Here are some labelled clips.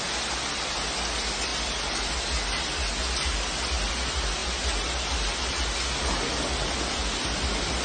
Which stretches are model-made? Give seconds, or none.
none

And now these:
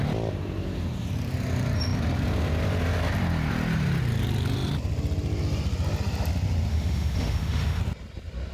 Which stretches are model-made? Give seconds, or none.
6.7-7.8 (autoencoder, DAC-VAE)

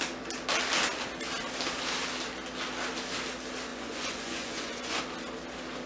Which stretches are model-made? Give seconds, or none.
3.7-5.0 (vocoder, Vocos)